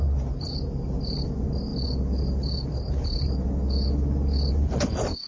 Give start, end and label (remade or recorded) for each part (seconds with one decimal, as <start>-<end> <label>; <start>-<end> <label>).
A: 0.0-5.3 recorded